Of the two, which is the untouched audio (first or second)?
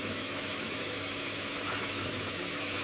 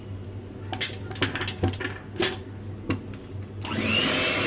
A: second